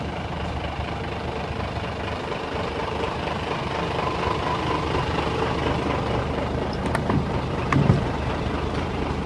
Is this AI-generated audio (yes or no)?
yes